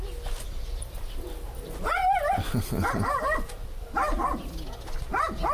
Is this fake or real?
real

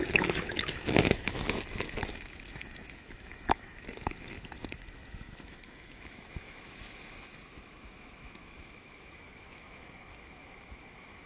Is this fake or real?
fake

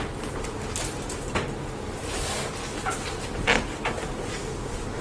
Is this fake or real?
real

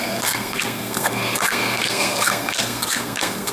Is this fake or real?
fake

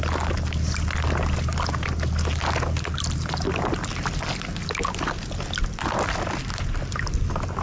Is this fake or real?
real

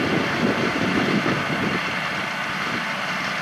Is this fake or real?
real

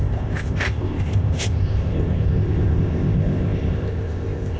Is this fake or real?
fake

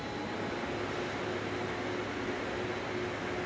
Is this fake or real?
real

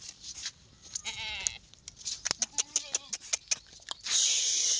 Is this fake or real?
real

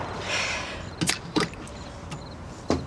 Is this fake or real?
real